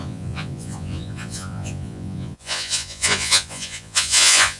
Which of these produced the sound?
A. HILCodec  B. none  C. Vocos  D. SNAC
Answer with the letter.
C